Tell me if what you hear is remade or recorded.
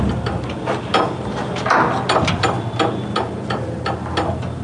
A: recorded